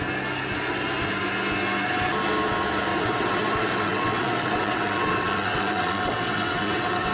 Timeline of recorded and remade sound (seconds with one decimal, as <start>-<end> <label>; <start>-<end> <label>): 0.0-2.9 recorded; 2.9-7.1 remade